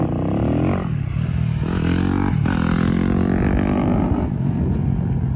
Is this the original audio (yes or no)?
yes